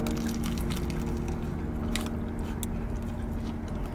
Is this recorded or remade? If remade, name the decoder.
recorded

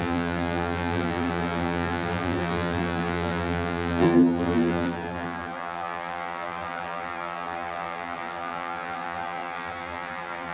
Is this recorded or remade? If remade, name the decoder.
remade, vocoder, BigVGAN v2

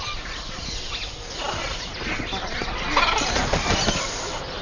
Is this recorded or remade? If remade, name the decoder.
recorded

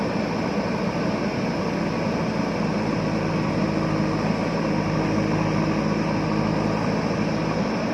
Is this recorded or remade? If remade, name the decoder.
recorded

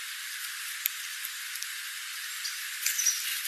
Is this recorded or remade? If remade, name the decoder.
remade, vocoder, BigVGAN v2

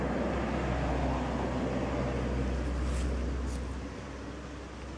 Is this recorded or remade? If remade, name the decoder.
recorded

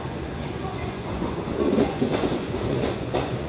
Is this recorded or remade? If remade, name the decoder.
remade, vocoder, Vocos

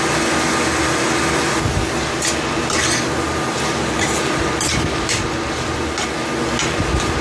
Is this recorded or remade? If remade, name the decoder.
recorded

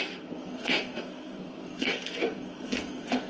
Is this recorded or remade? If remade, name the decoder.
remade, codec, SNAC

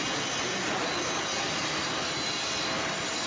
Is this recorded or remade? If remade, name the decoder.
recorded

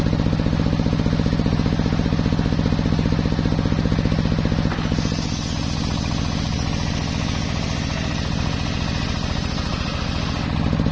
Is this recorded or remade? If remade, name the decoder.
recorded